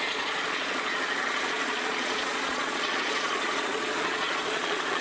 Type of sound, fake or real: fake